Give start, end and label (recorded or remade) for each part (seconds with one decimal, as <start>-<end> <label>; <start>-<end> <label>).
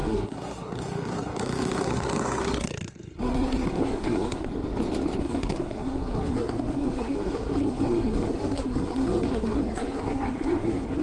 0.0-4.5 remade; 4.5-5.2 recorded; 5.2-11.0 remade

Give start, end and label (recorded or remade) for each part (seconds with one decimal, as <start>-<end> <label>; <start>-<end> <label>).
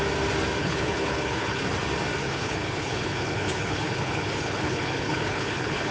0.0-0.6 recorded; 0.6-1.6 remade; 1.6-2.2 recorded; 2.2-5.9 remade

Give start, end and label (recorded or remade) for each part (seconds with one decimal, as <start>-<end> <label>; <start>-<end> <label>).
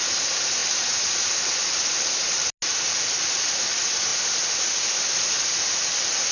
0.0-6.3 recorded